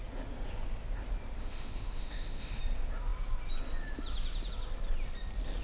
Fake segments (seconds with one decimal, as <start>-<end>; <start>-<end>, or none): 1.4-2.6